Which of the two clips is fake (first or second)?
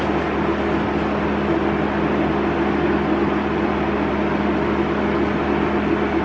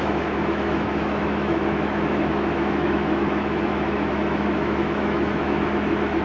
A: second